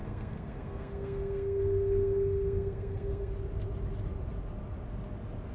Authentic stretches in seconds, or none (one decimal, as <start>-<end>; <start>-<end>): 3.3-5.5

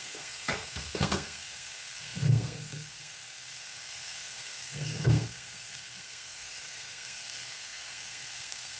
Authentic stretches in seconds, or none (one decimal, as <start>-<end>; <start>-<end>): none